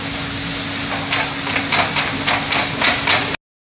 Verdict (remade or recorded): recorded